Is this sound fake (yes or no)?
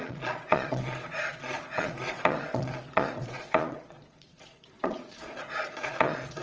yes